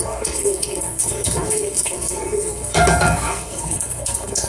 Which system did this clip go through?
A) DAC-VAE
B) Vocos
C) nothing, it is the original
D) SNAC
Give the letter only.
D